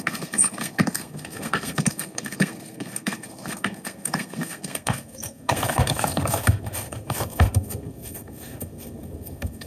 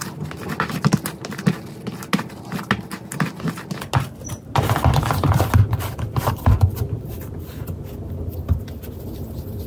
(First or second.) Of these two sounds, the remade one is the first